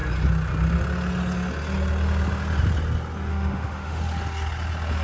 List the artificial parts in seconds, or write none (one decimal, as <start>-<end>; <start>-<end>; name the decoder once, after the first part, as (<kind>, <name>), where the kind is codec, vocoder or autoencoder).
3.3-4.0 (autoencoder, DAC-VAE)